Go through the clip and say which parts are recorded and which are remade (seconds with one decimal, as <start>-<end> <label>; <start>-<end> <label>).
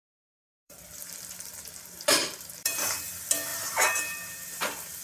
0.0-2.8 remade; 2.8-3.5 recorded; 3.5-5.0 remade